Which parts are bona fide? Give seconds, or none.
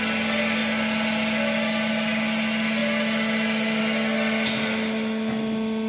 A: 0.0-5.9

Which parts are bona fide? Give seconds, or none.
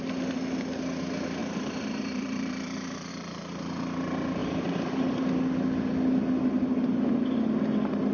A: 0.0-1.4; 3.1-4.4; 5.2-8.1